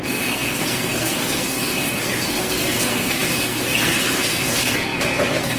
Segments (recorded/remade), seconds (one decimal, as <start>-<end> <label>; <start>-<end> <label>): 0.0-5.6 remade